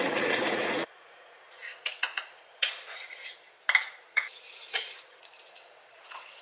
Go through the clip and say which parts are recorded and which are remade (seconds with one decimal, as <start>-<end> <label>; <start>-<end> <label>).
0.0-3.2 remade; 3.2-4.0 recorded; 4.0-6.4 remade